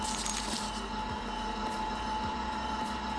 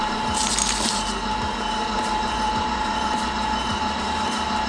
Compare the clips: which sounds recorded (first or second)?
first